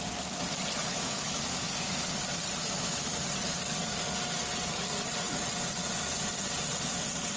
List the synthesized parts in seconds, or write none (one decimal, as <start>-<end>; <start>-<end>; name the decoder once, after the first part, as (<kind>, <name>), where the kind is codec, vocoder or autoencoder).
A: 0.9-1.9 (autoencoder, DAC-VAE); 2.6-3.2